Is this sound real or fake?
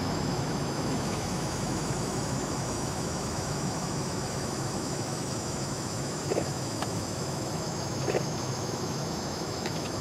fake